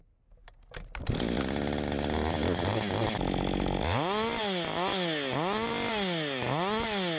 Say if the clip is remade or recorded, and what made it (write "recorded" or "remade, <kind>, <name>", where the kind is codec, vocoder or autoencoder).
recorded